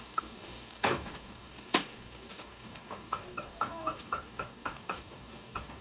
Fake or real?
fake